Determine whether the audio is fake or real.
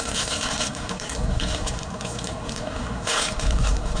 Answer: fake